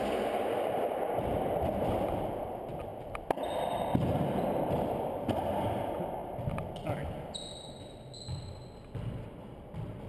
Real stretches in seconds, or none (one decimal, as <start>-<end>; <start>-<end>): 0.0-10.1